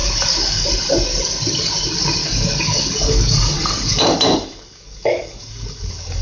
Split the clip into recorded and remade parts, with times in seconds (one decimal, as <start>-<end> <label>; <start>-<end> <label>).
0.0-0.7 remade; 0.7-2.2 recorded; 2.2-6.2 remade